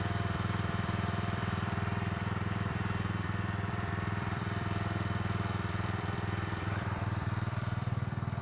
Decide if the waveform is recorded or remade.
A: remade